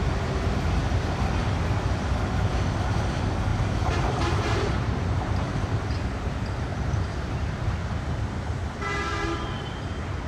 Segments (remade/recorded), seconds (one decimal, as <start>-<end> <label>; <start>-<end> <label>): 0.0-1.4 recorded; 1.4-2.0 remade; 2.0-3.5 recorded; 3.5-4.7 remade; 4.7-6.7 recorded; 6.7-7.3 remade; 7.3-10.3 recorded